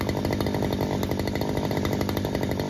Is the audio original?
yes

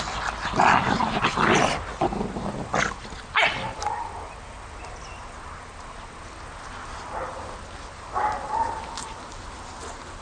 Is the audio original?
yes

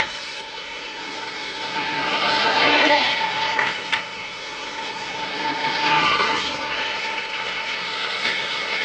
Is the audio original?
no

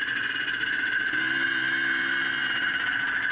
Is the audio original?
yes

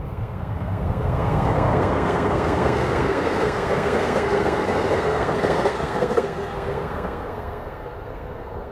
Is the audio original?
no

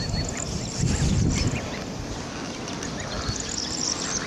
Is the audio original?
yes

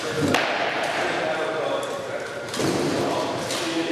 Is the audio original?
yes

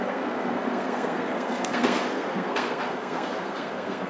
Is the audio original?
no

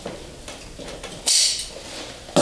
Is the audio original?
yes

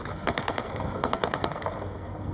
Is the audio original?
no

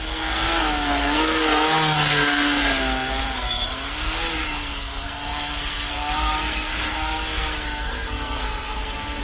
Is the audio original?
no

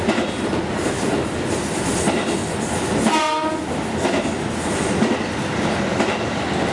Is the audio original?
yes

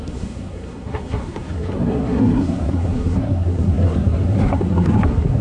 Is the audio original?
no